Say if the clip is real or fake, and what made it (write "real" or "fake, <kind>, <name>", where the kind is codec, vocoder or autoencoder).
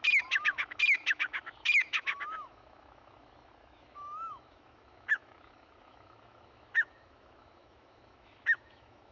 fake, autoencoder, DAC-VAE